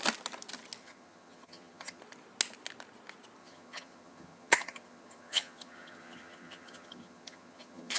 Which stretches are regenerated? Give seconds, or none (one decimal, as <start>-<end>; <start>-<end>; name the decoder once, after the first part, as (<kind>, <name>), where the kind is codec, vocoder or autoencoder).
0.8-2.0 (vocoder, HiFi-GAN); 3.4-8.0